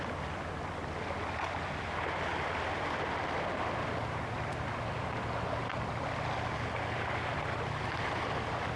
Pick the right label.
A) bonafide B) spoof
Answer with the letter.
A